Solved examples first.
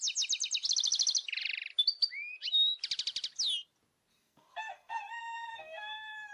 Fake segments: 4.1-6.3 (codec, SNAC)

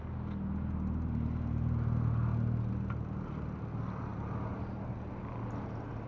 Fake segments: none